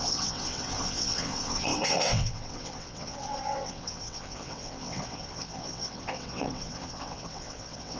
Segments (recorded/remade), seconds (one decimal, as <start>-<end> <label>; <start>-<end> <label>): 0.0-8.0 remade